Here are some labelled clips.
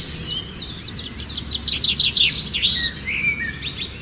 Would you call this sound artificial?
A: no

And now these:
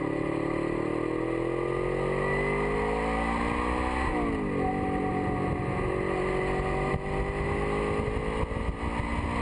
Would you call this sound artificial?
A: no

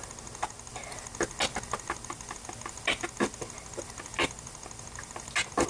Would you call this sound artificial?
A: no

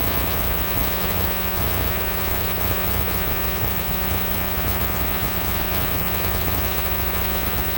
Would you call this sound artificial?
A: yes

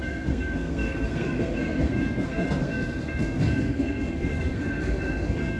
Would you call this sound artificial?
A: yes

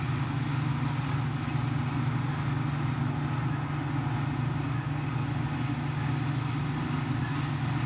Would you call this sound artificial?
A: no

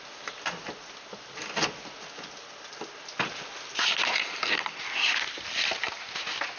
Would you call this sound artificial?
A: no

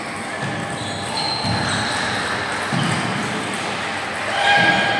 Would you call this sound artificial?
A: no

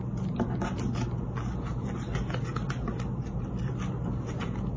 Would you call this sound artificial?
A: no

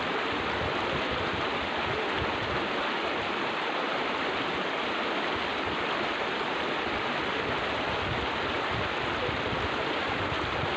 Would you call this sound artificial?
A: no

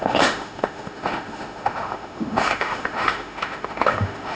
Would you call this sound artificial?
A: yes